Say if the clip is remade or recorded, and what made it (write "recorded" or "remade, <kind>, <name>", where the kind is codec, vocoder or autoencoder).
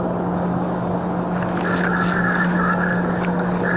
remade, codec, DAC